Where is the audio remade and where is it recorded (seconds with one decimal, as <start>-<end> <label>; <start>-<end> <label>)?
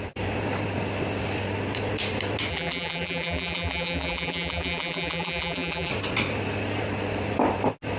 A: 0.0-2.5 recorded; 2.5-5.9 remade; 5.9-8.0 recorded